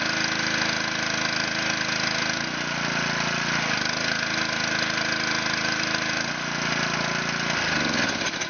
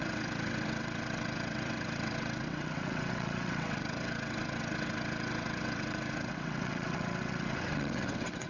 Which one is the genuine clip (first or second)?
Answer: first